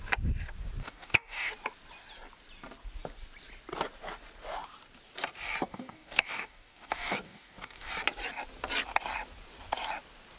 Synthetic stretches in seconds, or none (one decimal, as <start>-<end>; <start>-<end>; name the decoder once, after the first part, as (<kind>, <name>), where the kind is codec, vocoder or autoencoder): 0.8-1.5 (codec, DAC); 5.7-7.9